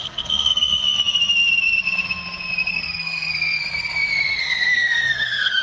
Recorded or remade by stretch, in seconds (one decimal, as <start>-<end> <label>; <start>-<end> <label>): 0.0-0.8 remade; 0.8-2.7 recorded; 2.7-3.6 remade; 3.6-4.4 recorded; 4.4-5.6 remade